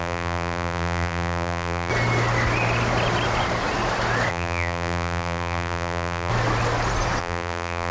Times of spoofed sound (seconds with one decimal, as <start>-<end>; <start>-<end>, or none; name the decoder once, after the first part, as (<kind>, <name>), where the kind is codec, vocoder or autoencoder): 0.0-1.9 (vocoder, BigVGAN v2); 4.3-6.3; 7.2-7.9